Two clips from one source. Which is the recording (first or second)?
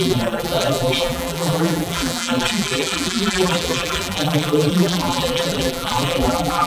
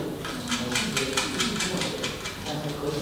second